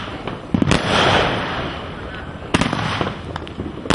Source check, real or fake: real